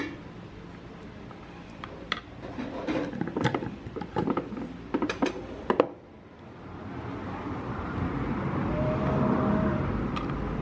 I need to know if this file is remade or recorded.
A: recorded